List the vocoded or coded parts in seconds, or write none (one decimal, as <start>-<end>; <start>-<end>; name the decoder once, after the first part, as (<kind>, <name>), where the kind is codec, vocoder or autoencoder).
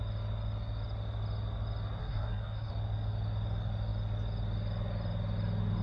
2.0-2.7 (codec, SNAC)